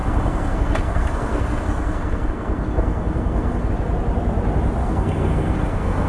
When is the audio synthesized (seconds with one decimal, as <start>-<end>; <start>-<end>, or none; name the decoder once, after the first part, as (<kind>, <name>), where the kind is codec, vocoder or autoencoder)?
0.0-3.7 (codec, SNAC); 4.8-6.1